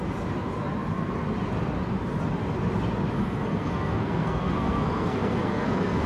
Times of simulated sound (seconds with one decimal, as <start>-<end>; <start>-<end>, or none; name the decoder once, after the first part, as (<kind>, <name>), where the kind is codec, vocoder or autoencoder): 3.2-6.1 (codec, SNAC)